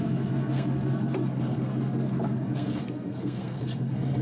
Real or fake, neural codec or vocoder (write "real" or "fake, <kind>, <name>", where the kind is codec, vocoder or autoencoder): fake, codec, SNAC